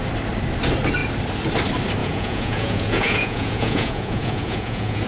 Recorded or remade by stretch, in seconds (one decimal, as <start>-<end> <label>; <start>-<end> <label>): 0.0-2.0 recorded; 2.0-5.1 remade